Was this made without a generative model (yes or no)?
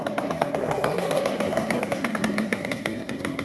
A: no